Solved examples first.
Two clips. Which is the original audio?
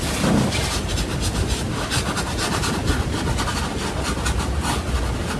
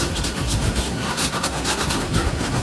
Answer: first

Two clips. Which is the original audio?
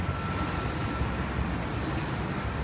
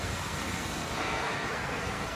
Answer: first